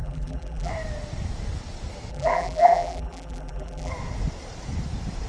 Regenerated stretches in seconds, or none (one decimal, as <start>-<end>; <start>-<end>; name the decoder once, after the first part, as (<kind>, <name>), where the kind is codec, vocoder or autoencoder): 0.0-0.7 (vocoder, BigVGAN v2); 2.1-3.9

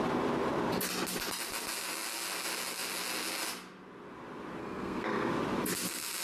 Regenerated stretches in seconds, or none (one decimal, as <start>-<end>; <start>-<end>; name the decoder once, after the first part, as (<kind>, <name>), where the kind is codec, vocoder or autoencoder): 4.6-5.3 (codec, SNAC)